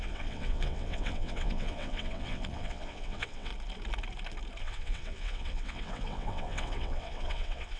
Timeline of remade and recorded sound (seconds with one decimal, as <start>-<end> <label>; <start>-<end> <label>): 0.0-3.5 remade; 3.5-4.6 recorded; 4.6-7.8 remade